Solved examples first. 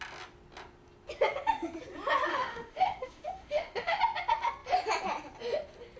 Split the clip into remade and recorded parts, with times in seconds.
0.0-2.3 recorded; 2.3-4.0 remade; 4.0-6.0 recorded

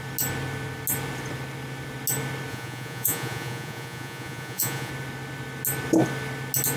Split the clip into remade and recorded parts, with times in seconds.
0.0-2.5 recorded; 2.5-4.9 remade; 4.9-6.8 recorded